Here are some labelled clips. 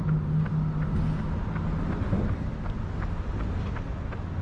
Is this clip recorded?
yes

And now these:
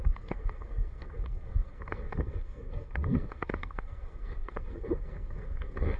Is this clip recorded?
no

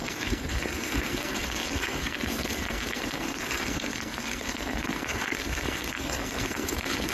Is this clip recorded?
no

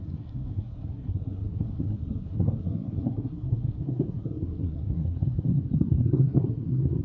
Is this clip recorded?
no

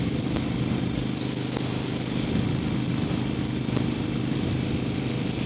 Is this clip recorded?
yes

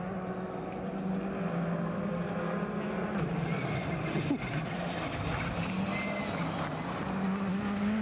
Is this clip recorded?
yes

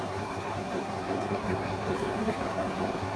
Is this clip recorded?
no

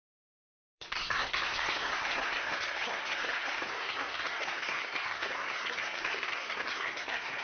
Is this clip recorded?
no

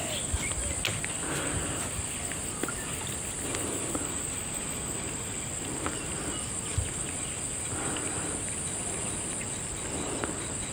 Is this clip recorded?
yes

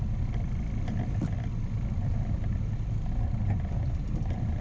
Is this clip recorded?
yes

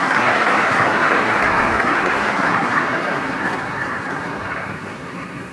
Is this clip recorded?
no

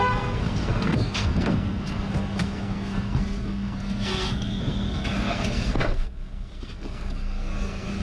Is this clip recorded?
no